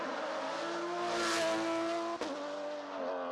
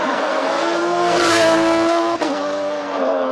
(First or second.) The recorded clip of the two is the first